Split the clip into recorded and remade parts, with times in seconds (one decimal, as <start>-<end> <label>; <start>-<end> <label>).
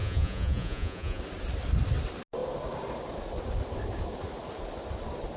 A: 0.0-1.2 remade; 1.2-5.4 recorded